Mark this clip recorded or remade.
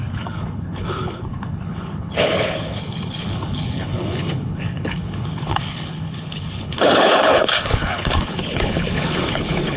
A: remade